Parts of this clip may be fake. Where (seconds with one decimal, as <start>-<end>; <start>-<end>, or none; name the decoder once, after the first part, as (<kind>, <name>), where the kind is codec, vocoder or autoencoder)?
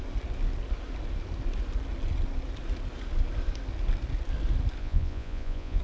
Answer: 4.8-5.8 (vocoder, Vocos)